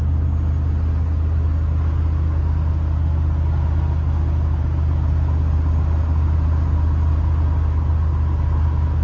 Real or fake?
real